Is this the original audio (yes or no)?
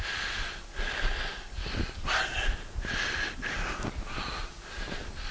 yes